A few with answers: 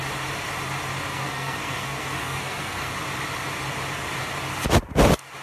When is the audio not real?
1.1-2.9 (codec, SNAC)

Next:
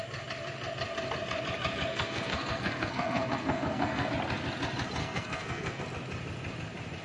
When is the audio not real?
1.9-4.1 (codec, SNAC); 5.0-5.8

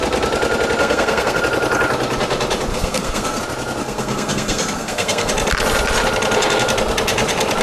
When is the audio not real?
0.8-1.4 (codec, SNAC); 2.7-3.4; 3.8-5.3

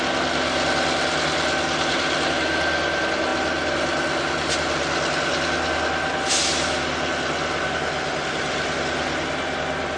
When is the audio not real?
none

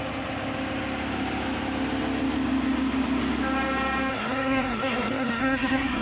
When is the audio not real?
4.1-6.0 (codec, SNAC)

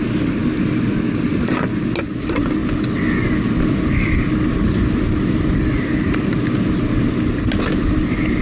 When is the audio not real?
none

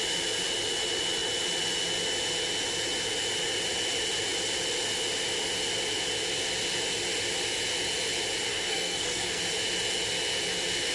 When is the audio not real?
8.5-9.4 (codec, SNAC)

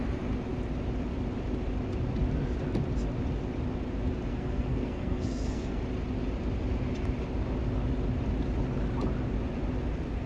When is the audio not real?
4.3-5.8 (codec, SNAC)